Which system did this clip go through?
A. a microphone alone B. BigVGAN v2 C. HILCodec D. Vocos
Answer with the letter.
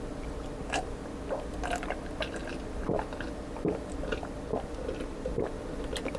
A